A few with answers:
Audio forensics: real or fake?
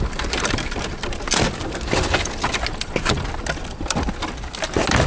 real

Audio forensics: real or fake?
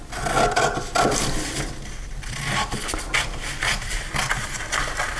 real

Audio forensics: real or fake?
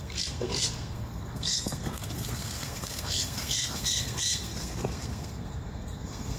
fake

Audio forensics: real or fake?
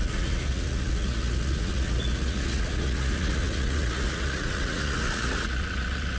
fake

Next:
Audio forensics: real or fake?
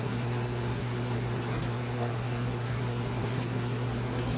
fake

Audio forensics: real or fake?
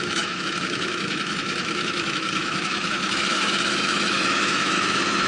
fake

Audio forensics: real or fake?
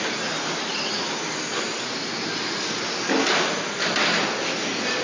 real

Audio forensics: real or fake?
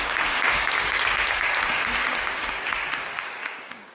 fake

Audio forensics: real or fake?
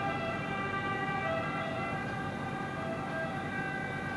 real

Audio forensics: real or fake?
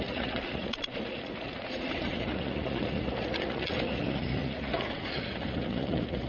fake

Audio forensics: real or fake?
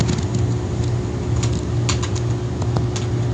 real